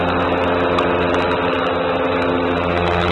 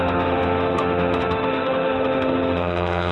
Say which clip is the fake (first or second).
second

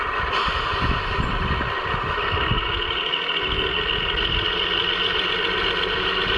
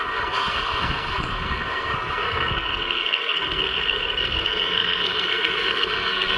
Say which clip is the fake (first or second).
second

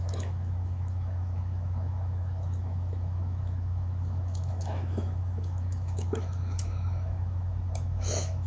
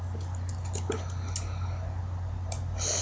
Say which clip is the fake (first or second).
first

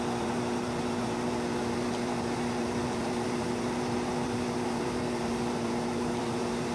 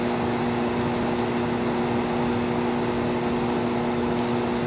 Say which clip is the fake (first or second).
first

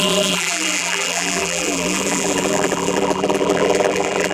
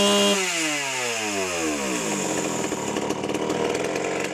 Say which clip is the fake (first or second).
first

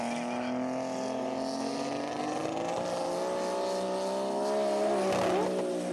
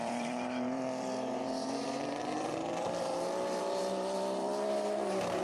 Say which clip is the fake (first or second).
second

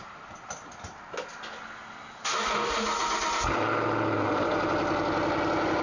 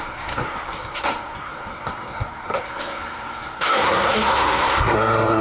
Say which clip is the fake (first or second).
second